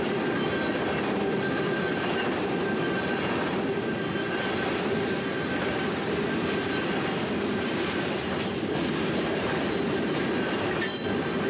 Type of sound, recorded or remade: recorded